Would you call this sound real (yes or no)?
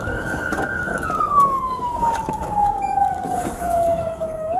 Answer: no